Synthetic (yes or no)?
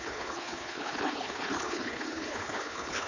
yes